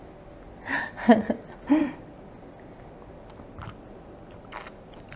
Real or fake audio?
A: real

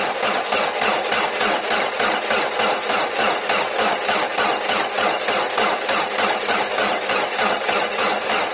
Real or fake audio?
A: real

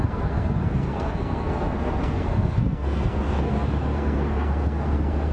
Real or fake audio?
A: fake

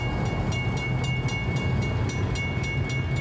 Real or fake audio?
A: real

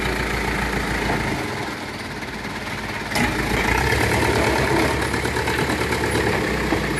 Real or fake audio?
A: real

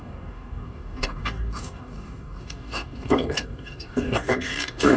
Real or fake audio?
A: fake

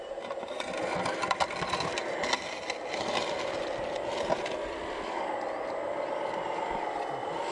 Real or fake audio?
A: real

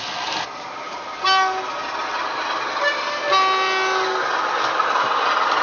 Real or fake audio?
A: real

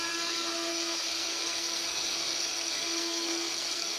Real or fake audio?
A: fake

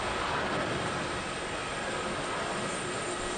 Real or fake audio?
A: real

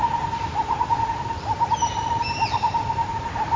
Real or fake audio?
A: real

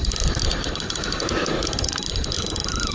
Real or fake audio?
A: real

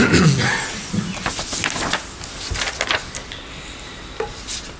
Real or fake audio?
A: real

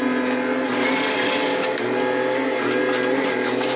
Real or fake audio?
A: real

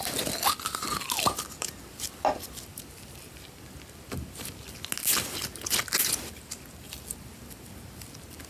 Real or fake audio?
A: real